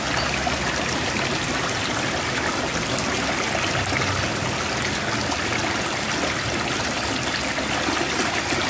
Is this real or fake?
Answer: real